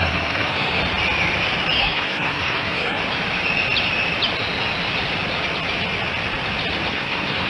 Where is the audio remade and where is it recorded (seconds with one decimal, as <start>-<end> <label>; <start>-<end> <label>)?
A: 0.0-0.8 remade; 0.8-1.8 recorded; 1.8-3.0 remade; 3.0-6.9 recorded; 6.9-7.5 remade